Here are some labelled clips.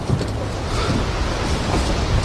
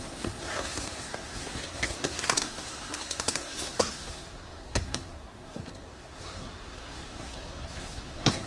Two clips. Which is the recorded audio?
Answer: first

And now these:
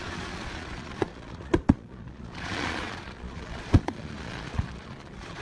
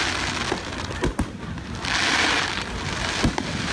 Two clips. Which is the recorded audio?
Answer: second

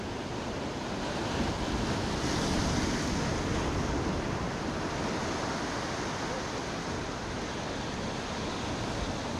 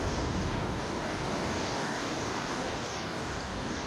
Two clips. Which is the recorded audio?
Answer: first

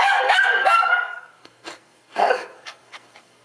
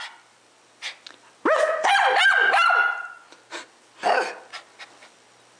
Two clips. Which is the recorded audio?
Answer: second